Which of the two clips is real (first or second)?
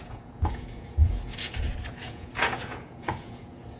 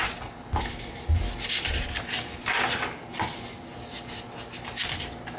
second